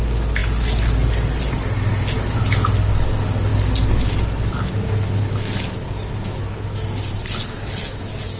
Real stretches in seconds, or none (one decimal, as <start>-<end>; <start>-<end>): 0.0-8.4